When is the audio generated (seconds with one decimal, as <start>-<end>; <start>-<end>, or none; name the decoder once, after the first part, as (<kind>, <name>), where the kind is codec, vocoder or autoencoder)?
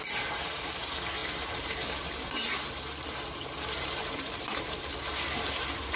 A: 1.2-4.8 (vocoder, BigVGAN v2)